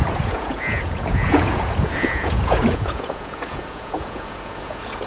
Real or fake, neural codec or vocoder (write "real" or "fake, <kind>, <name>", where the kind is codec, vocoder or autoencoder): fake, vocoder, Vocos